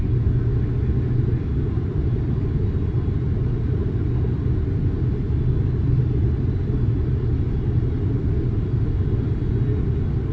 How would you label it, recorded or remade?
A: recorded